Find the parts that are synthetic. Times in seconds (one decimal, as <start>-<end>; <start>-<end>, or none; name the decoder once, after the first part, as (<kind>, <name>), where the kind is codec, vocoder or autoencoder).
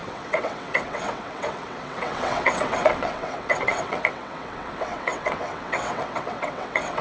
0.0-7.0 (vocoder, WaveNeXt)